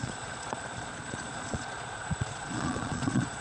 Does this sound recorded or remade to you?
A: remade